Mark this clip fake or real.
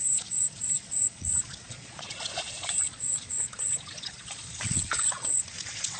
fake